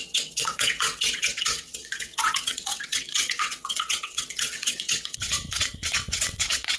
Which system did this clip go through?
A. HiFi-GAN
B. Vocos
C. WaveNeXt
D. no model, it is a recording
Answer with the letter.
C